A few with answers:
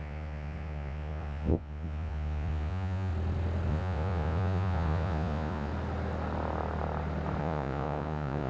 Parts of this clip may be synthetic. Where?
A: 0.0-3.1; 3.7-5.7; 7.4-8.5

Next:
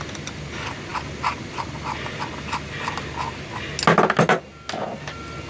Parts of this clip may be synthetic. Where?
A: none